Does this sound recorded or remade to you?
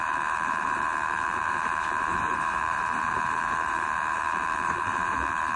remade